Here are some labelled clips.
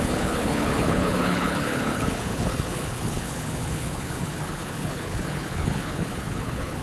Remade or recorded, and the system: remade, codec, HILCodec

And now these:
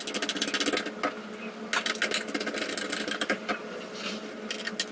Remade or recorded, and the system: recorded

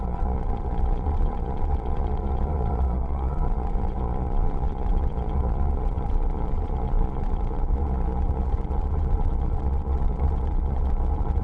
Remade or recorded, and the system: remade, vocoder, Vocos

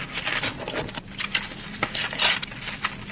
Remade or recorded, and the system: recorded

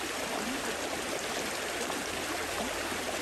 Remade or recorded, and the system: recorded